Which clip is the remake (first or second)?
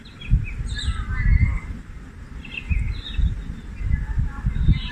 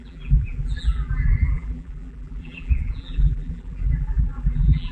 second